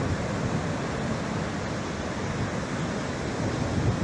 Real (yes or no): yes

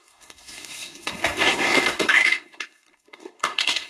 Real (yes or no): no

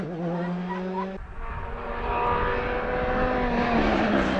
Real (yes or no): yes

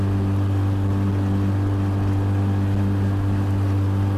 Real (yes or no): yes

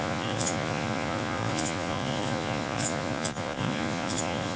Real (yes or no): no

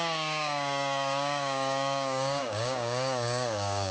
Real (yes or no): no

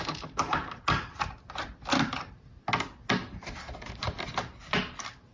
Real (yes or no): yes